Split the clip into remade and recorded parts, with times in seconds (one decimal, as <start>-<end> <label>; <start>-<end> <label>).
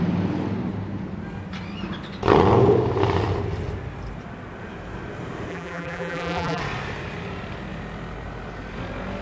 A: 0.0-5.5 recorded; 5.5-6.6 remade; 6.6-9.2 recorded